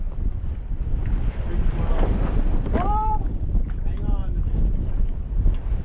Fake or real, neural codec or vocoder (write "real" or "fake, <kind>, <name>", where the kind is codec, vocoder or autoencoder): real